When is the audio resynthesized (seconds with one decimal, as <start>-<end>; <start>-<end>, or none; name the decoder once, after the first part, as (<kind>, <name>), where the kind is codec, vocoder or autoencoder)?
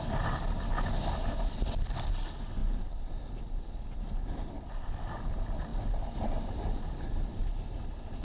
2.6-3.1 (vocoder, BigVGAN v2); 5.7-7.4